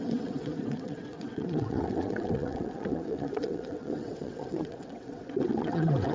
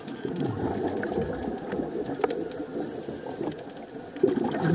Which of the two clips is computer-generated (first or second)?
first